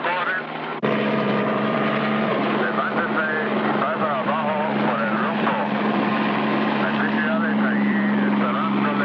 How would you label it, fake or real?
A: fake